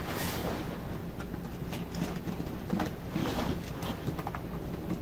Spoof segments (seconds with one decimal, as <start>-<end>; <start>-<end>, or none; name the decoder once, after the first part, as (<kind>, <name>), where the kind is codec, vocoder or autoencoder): 3.2-4.3 (vocoder, BigVGAN v2)